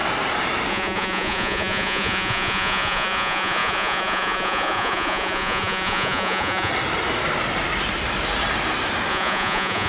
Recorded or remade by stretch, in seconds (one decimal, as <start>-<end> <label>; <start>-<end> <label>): 0.0-0.7 recorded; 0.7-6.7 remade; 6.7-9.1 recorded; 9.1-9.9 remade